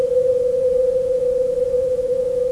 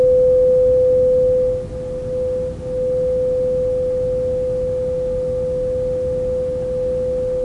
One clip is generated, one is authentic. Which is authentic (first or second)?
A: second